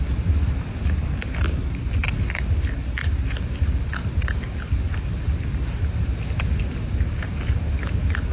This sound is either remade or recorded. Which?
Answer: recorded